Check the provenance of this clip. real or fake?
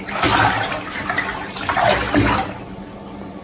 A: real